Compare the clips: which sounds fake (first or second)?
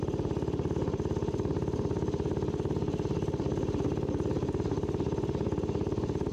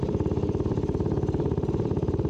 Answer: second